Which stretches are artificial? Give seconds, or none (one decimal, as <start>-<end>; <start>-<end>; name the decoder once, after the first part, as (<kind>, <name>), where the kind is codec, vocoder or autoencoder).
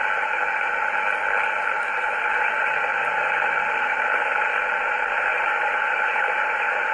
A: none